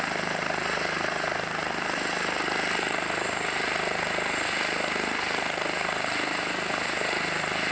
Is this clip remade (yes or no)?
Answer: no